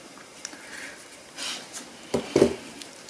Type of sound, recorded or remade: recorded